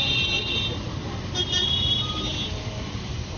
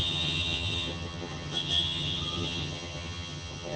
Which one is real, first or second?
first